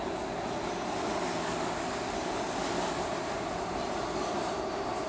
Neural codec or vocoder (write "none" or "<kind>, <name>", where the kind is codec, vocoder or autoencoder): none